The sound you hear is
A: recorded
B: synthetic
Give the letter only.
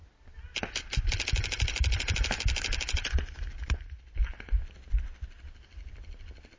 A